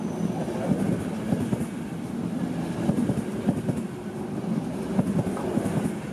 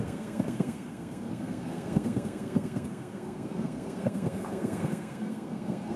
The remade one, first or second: second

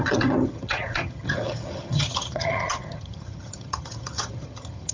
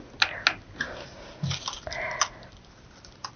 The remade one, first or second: first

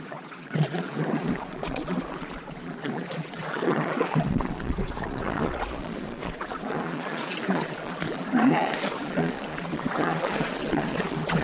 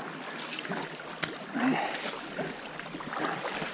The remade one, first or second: first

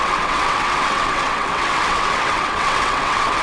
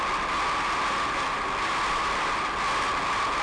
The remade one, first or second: first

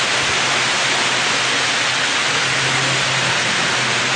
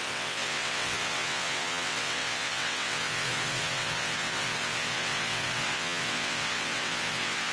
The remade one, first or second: second